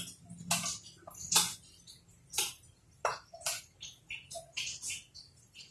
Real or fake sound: real